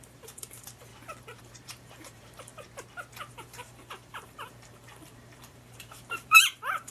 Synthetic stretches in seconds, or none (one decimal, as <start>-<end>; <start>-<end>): 0.0-0.9; 1.4-2.5; 3.3-6.9